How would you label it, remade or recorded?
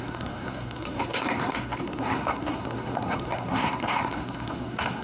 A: remade